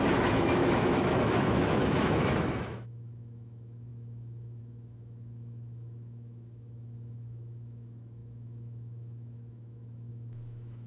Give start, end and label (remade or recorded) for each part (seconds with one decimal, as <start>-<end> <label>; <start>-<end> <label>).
0.0-10.9 remade